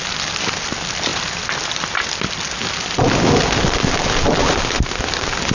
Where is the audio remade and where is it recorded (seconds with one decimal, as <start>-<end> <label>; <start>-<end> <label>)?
0.0-5.5 recorded